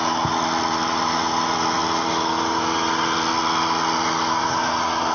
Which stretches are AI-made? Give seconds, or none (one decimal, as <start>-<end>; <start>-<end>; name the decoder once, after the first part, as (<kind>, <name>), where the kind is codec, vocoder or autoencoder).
none